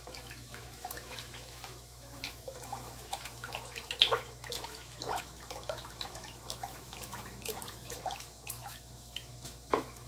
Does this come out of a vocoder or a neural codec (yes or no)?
yes